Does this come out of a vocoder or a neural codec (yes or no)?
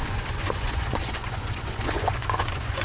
yes